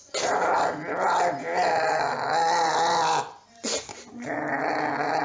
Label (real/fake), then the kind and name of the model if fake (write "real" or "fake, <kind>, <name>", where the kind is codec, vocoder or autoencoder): real